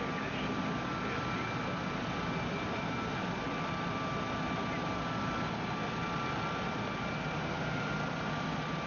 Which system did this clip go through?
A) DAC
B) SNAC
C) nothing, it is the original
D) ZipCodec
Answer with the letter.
C